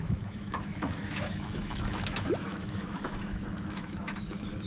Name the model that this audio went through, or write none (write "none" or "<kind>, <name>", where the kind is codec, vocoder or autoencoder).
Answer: autoencoder, DAC-VAE